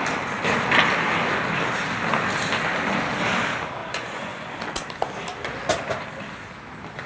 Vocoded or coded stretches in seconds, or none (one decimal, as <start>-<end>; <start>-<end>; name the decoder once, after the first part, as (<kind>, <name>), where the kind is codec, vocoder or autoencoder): 3.8-4.6 (vocoder, Vocos)